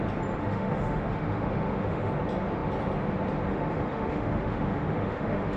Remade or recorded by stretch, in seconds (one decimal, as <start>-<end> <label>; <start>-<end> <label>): 0.0-0.4 recorded; 0.4-2.1 remade; 2.1-3.5 recorded; 3.5-5.6 remade